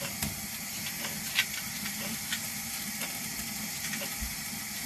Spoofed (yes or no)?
no